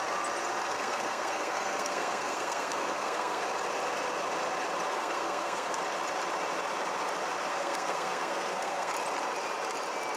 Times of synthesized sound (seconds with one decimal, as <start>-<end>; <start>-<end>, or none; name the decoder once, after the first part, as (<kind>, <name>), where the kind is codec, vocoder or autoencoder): 0.7-3.4 (codec, SNAC); 4.9-5.8; 7.5-8.9